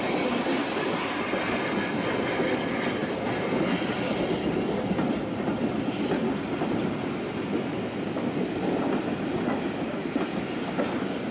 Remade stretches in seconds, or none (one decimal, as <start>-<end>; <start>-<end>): none

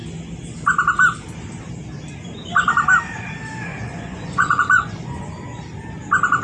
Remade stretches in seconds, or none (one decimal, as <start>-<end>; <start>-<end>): 3.7-5.3